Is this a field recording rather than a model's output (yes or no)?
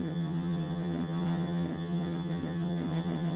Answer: no